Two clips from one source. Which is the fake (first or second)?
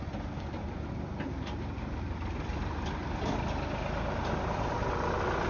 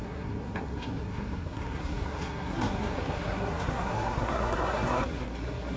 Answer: second